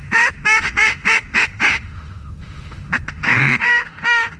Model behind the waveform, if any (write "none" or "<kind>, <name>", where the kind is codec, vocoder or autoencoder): autoencoder, DAC-VAE